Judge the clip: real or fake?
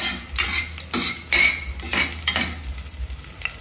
real